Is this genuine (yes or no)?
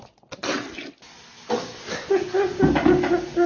yes